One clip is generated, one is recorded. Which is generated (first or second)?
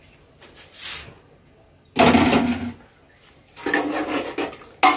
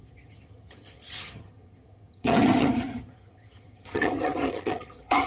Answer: second